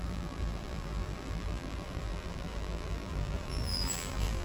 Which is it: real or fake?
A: fake